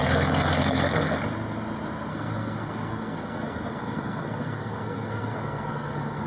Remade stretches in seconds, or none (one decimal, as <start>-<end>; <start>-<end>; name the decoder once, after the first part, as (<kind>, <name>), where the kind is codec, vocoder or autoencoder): 0.0-1.2 (codec, SNAC); 2.1-6.3